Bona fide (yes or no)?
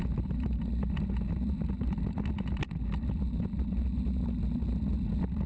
yes